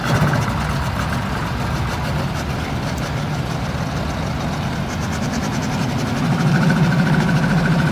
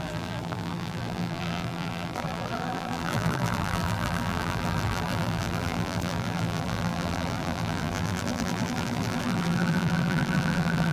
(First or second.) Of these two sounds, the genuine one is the first